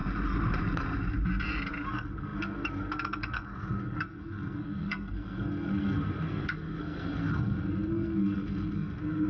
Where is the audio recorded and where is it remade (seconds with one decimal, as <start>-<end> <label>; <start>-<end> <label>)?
0.0-1.9 recorded; 1.9-9.3 remade